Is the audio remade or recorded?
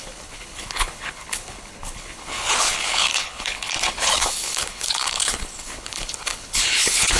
remade